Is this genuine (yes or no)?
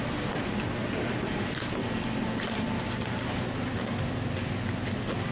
yes